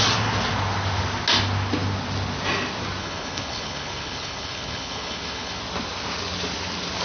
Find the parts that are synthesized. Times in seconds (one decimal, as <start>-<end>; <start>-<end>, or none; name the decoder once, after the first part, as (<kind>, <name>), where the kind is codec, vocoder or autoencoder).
3.0-5.6 (codec, HILCodec)